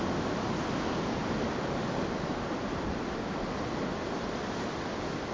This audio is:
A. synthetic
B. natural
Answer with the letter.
B